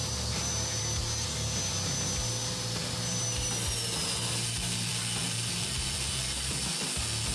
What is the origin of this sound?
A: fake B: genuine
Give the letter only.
B